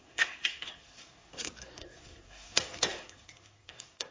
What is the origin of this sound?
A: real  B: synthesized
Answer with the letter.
B